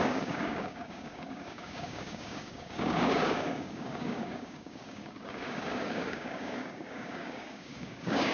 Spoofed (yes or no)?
yes